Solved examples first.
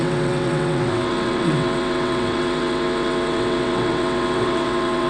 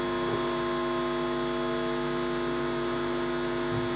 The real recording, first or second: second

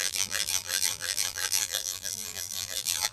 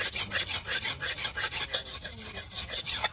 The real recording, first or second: second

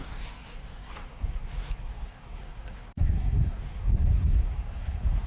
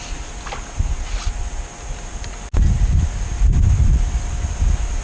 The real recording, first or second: second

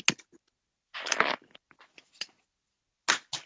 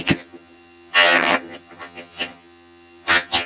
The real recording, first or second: first